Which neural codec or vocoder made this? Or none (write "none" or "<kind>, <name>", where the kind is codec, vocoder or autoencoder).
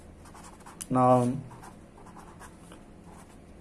none